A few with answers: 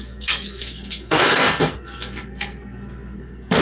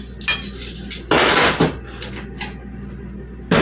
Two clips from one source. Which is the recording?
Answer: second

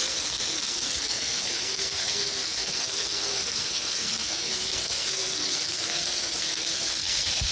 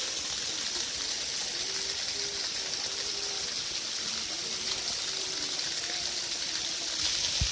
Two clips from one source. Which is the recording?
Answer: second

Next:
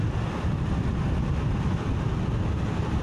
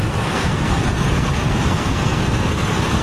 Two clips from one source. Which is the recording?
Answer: first